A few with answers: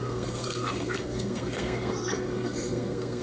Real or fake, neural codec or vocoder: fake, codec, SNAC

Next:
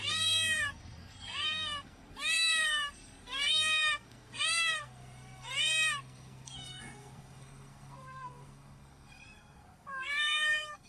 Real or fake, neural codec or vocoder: fake, codec, SNAC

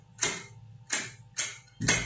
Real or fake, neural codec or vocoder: real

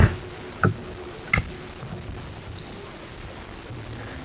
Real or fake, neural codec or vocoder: real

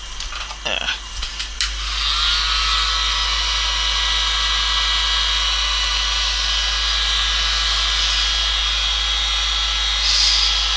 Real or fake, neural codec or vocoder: real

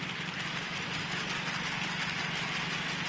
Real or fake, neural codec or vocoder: real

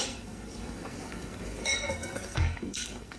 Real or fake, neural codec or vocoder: fake, codec, SNAC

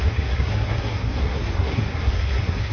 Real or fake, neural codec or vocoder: fake, codec, SNAC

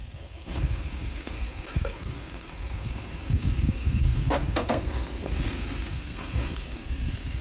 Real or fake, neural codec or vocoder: fake, codec, SNAC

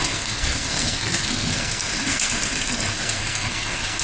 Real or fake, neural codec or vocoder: fake, codec, SNAC